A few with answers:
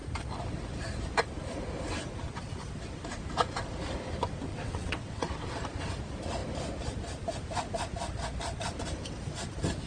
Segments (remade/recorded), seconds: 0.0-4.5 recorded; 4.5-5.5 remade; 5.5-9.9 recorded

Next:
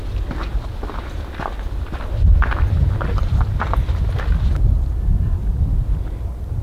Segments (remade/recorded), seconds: 0.0-6.6 recorded

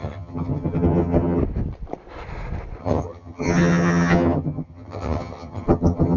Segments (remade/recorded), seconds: 0.0-1.4 remade; 1.4-2.8 recorded; 2.8-6.2 remade